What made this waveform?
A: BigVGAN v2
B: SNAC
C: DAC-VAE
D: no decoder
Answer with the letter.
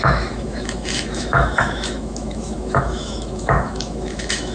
C